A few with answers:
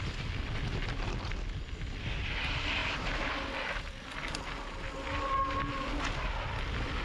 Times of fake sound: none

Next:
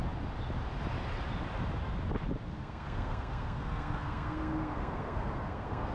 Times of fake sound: 2.6-5.9 (codec, SNAC)

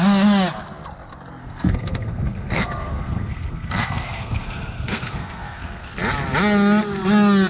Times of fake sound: 1.4-5.9 (codec, SNAC)